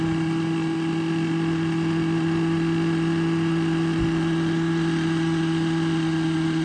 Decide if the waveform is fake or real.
real